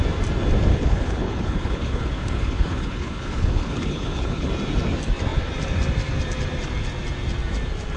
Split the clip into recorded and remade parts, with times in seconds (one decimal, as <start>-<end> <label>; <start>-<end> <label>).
0.0-0.7 recorded; 0.7-4.5 remade; 4.5-8.0 recorded